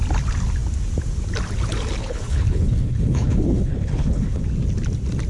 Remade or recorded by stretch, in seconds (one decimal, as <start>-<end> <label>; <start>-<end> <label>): 0.0-2.0 recorded; 2.0-4.4 remade; 4.4-5.3 recorded